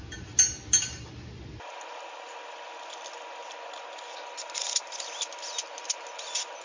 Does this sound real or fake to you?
real